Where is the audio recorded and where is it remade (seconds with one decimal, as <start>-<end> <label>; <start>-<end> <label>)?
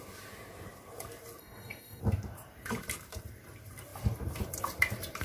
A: 0.0-1.4 recorded; 1.4-2.0 remade; 2.0-5.2 recorded